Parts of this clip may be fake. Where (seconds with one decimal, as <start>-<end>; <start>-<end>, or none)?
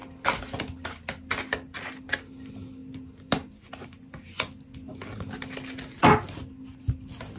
none